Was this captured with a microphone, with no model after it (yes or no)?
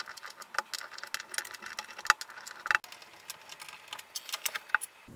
yes